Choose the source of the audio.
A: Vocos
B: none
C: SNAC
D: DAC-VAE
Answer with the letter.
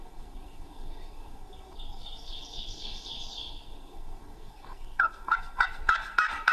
C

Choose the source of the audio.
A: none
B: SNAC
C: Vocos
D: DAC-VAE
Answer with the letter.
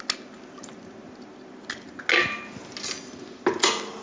A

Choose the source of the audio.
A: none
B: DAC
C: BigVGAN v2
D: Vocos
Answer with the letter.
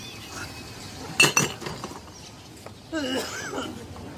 A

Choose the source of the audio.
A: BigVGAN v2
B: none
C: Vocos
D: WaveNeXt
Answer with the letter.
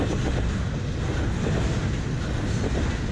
B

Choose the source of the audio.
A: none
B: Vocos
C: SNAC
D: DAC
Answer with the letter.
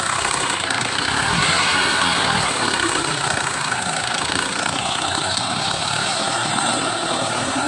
C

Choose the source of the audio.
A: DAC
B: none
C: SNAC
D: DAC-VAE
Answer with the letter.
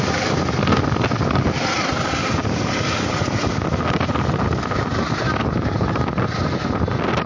B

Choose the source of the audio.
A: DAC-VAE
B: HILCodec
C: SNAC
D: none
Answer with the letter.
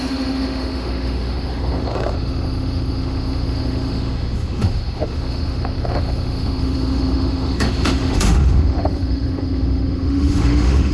A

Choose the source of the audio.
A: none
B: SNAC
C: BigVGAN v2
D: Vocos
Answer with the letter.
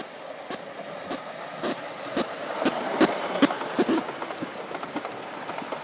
A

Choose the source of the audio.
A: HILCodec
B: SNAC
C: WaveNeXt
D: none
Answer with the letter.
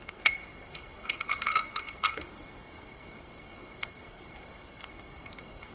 B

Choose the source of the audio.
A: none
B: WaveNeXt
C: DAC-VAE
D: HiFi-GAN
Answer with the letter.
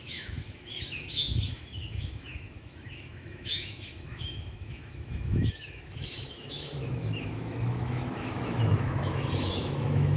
C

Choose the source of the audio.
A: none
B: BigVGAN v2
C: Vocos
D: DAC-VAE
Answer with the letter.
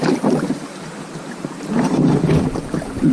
B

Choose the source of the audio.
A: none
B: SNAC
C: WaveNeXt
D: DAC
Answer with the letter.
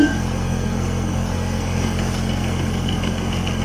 B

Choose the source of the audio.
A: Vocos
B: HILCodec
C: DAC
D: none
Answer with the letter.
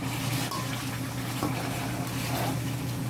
D